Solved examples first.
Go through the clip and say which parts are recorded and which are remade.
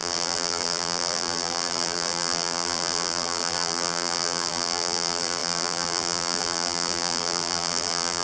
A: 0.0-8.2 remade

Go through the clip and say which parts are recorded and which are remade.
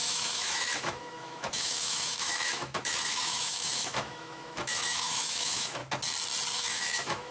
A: 0.0-5.8 remade; 5.8-6.5 recorded; 6.5-7.3 remade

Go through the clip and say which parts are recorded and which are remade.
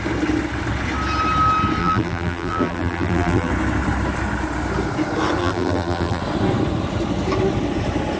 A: 0.0-1.8 recorded; 1.8-3.5 remade; 3.5-5.4 recorded; 5.4-6.2 remade; 6.2-8.2 recorded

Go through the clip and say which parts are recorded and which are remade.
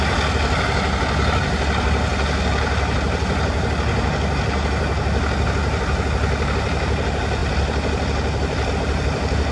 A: 0.0-9.5 recorded